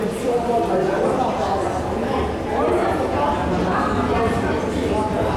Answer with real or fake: real